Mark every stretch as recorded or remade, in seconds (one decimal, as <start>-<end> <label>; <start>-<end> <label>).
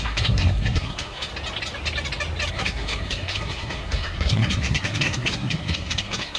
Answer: 0.0-1.3 remade; 1.3-2.5 recorded; 2.5-6.4 remade